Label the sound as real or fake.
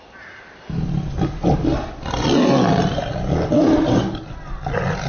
real